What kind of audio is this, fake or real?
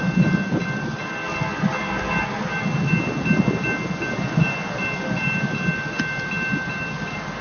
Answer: real